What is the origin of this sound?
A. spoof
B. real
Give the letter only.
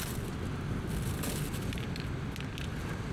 B